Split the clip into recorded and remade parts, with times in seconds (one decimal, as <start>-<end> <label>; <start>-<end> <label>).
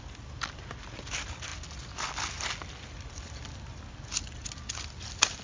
0.0-5.4 recorded